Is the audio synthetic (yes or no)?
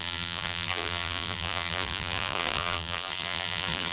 yes